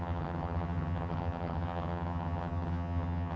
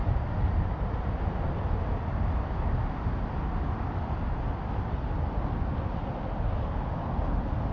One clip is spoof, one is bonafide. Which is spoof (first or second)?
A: first